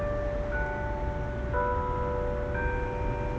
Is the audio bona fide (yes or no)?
yes